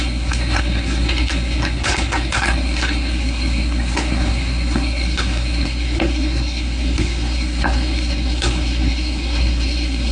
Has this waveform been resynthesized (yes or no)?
yes